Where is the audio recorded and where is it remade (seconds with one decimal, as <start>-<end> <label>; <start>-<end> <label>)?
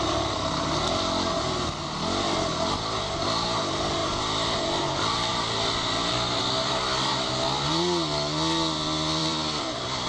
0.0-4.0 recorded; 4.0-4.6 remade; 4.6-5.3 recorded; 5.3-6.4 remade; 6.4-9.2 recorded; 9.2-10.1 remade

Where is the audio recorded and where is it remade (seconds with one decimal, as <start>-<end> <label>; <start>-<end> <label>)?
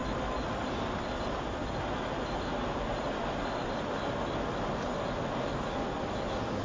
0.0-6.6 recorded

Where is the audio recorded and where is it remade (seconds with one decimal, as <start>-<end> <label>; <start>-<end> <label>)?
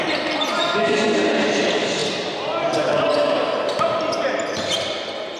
0.0-5.4 remade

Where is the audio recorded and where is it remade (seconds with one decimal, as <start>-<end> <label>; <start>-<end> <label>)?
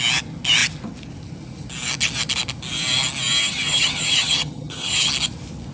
0.0-3.4 recorded; 3.4-5.1 remade; 5.1-5.7 recorded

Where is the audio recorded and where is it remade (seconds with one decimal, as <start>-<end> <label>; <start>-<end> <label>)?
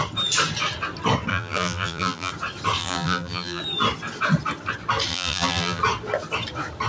0.0-1.3 recorded; 1.3-2.3 remade; 2.3-2.8 recorded; 2.8-3.6 remade; 3.6-5.1 recorded; 5.1-5.8 remade; 5.8-6.9 recorded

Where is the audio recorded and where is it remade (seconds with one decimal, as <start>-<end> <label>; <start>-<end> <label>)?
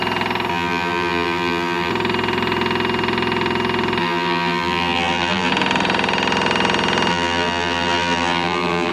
0.0-0.5 recorded; 0.5-1.9 remade; 1.9-4.0 recorded; 4.0-5.5 remade; 5.5-7.1 recorded; 7.1-8.9 remade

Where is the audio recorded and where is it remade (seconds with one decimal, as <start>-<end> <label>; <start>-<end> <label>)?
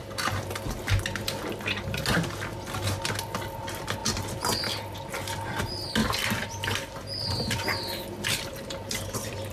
0.0-6.0 recorded; 6.0-6.5 remade; 6.5-9.5 recorded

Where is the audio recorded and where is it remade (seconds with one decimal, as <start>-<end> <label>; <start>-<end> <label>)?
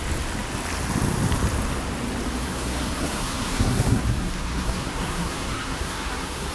0.0-2.4 recorded; 2.4-6.5 remade